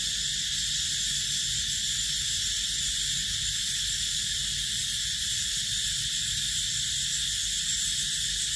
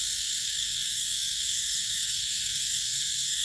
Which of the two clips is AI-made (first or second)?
second